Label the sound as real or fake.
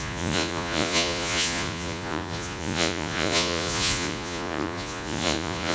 fake